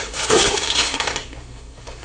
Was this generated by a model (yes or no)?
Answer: yes